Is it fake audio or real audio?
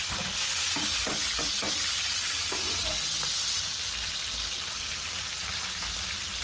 real